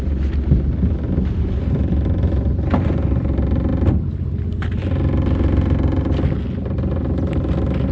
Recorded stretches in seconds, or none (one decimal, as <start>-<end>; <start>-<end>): 0.0-7.9